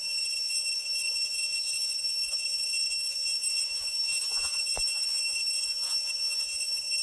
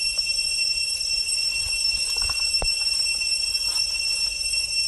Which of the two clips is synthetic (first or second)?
first